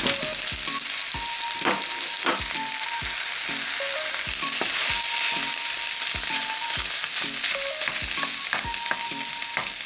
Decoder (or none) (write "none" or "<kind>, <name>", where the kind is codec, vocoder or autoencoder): none